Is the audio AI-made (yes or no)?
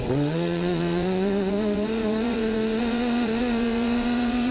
yes